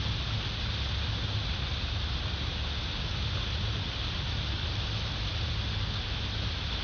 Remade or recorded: recorded